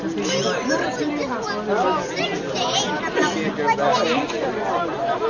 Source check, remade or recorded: recorded